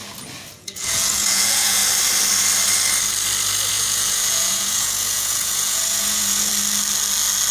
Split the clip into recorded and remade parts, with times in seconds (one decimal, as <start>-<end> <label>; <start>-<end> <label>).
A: 0.0-0.5 recorded; 0.5-1.8 remade; 1.8-3.7 recorded; 3.7-6.5 remade; 6.5-7.5 recorded